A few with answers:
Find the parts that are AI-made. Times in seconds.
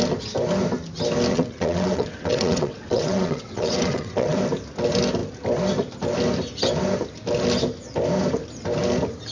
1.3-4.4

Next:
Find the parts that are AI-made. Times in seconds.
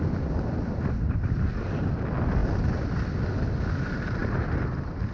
none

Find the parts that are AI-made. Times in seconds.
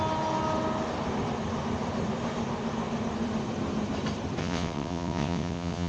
4.4-5.9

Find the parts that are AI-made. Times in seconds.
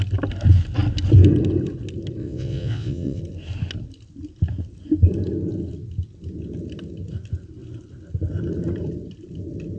2.2-3.2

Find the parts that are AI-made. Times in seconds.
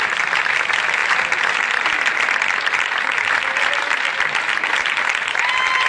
none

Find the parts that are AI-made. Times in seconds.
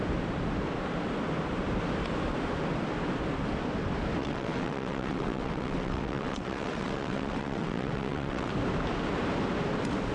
4.2-8.5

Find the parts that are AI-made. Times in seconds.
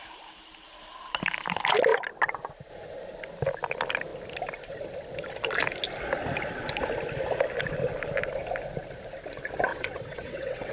9.7-10.7